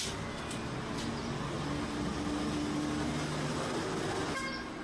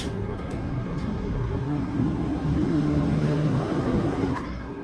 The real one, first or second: first